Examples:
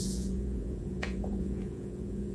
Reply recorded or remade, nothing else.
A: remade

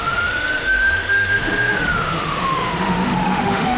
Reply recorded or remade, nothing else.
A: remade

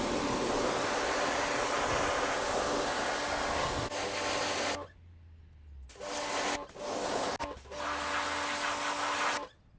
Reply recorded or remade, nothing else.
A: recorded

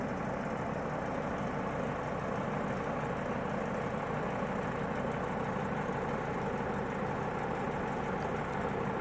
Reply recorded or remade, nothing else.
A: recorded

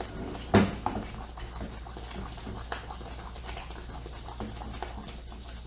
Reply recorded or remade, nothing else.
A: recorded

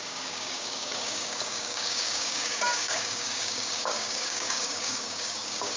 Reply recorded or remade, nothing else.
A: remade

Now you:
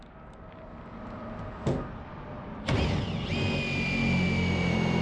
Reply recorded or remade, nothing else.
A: recorded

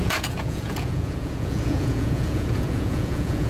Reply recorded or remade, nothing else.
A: remade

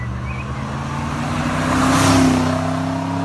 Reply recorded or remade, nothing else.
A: recorded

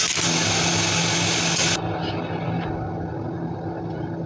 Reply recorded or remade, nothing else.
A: recorded